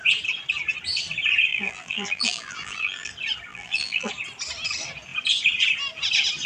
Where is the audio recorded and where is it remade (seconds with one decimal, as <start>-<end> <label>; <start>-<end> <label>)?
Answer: 0.0-1.5 recorded; 1.5-3.1 remade; 3.1-3.5 recorded; 3.5-4.1 remade; 4.1-6.5 recorded